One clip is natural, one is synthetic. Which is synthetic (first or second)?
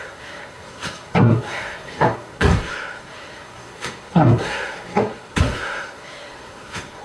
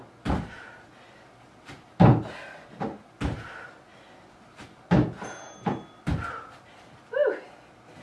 first